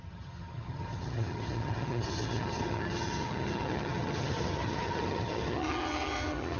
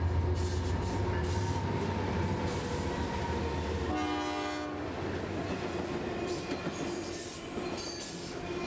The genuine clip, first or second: second